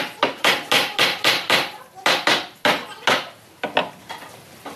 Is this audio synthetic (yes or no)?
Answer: no